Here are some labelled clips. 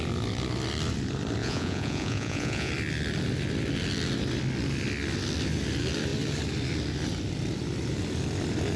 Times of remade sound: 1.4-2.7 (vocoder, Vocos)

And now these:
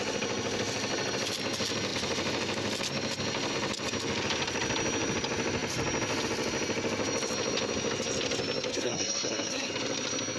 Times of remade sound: 8.7-9.7 (codec, SNAC)

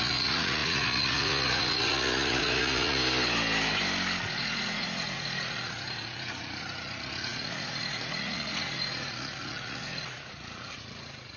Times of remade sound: 0.0-3.0 (vocoder, Vocos); 4.2-11.4

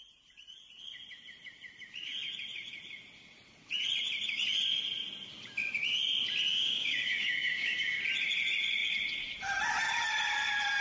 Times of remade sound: 6.5-8.0 (codec, DAC)